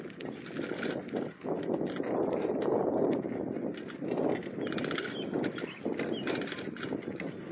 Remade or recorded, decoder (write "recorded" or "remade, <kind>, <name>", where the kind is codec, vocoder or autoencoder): recorded